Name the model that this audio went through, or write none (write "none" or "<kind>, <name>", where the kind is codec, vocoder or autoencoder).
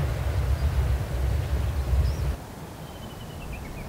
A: none